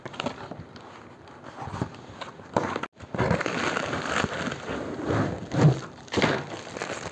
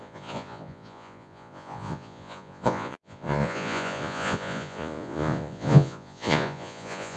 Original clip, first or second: first